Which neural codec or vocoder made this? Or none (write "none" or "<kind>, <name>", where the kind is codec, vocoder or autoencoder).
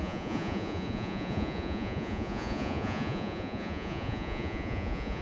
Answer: vocoder, Vocos